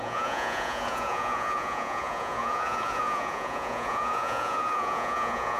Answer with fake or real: fake